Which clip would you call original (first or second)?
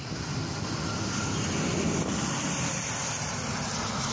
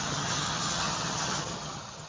first